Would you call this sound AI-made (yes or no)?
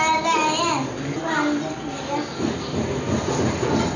no